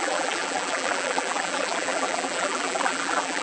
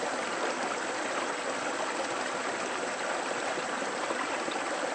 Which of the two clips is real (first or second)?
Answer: second